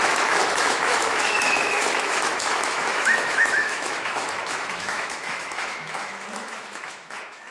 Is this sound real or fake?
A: fake